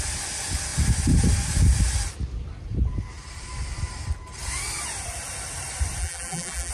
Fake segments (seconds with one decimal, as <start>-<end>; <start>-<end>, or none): 6.0-6.7